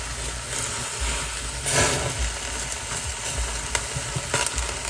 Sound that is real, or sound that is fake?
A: real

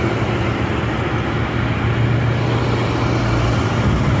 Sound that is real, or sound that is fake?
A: real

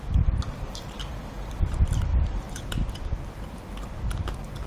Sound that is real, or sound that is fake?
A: fake